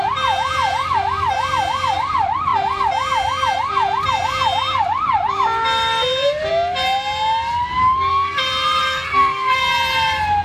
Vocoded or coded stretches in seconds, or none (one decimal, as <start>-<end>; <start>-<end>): 7.8-8.4; 8.8-9.7